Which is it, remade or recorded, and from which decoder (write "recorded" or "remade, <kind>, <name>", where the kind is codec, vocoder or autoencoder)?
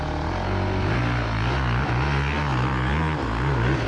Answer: recorded